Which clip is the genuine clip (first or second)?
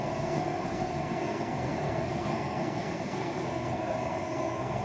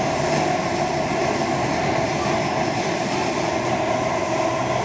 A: second